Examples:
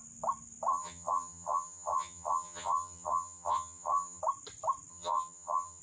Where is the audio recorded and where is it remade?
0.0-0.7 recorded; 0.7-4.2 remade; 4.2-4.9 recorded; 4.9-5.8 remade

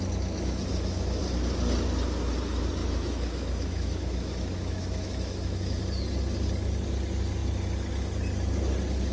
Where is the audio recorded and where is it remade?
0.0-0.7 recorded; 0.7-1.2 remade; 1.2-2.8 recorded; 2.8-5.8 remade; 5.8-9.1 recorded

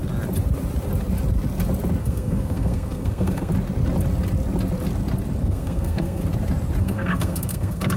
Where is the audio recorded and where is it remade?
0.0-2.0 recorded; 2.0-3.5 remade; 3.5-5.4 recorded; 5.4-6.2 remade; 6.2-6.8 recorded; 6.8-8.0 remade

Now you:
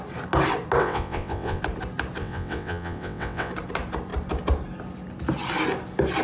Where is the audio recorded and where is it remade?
0.0-0.8 recorded; 0.8-1.6 remade; 1.6-2.2 recorded; 2.2-3.5 remade; 3.5-6.2 recorded

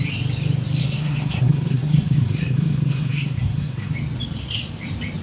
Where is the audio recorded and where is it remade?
0.0-0.8 recorded; 0.8-3.9 remade; 3.9-5.2 recorded

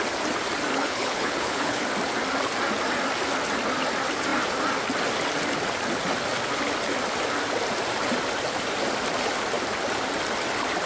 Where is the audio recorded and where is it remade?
0.0-0.7 recorded; 0.7-1.8 remade; 1.8-10.9 recorded